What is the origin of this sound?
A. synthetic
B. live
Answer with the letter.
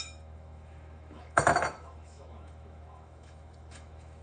A